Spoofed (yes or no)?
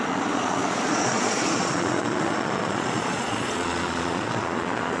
yes